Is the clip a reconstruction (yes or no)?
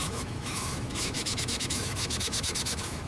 yes